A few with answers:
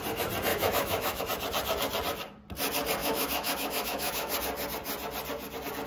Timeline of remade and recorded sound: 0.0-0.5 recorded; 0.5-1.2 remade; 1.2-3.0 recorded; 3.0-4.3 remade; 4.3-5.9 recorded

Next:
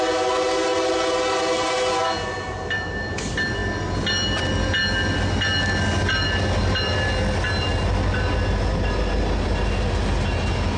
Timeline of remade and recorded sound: 0.0-10.8 recorded

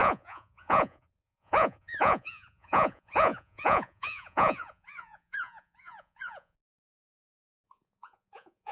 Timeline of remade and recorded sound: 0.0-8.7 remade